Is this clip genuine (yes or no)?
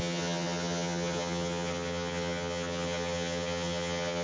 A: no